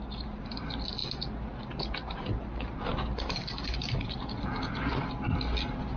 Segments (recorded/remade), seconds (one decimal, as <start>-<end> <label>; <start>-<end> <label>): 0.0-6.0 recorded